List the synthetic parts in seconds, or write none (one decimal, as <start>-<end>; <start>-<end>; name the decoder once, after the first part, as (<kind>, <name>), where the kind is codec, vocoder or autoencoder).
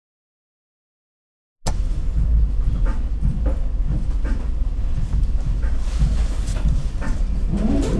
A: none